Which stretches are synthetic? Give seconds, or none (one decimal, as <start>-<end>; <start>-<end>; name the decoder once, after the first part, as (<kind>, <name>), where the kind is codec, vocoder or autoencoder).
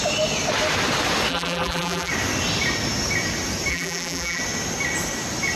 1.3-2.1 (vocoder, BigVGAN v2); 3.7-4.4